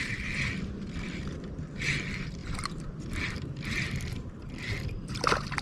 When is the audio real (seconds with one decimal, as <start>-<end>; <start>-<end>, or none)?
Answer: none